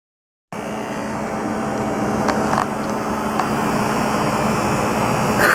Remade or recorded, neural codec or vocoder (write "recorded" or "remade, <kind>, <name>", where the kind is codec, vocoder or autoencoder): recorded